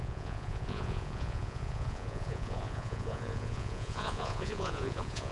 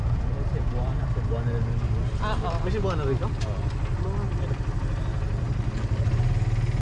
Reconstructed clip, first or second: first